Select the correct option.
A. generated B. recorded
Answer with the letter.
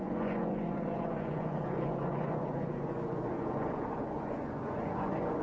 A